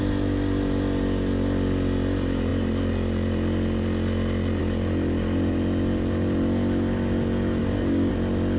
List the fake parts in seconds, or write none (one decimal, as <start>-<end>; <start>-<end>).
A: 7.6-8.1